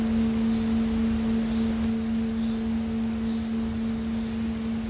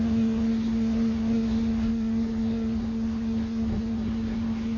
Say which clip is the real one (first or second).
first